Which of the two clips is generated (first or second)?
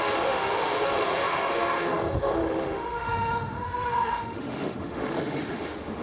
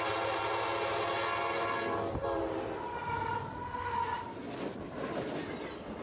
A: first